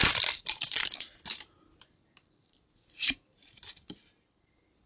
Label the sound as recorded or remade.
remade